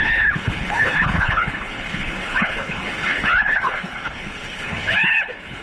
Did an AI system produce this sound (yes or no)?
yes